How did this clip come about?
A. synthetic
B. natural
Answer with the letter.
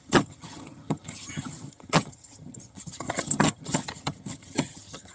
A